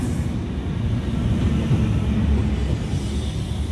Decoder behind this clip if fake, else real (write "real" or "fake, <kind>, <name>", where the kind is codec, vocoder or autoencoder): real